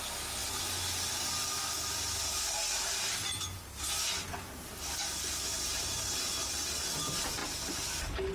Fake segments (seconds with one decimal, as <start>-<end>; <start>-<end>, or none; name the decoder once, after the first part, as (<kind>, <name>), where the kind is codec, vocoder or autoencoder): none